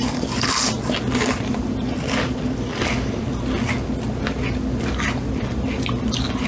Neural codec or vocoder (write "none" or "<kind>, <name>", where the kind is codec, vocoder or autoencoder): none